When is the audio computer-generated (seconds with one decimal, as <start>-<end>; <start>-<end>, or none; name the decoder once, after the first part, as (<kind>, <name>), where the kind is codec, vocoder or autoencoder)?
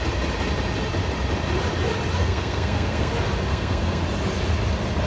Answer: 2.2-3.1 (codec, SNAC); 3.5-4.0